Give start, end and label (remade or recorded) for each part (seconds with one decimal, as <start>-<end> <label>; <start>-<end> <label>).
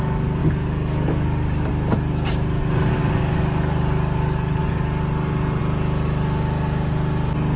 0.0-0.4 recorded; 0.4-1.7 remade; 1.7-2.9 recorded; 2.9-4.6 remade; 4.6-7.6 recorded